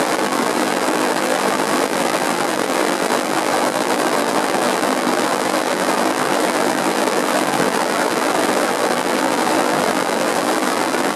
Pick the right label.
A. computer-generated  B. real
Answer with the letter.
A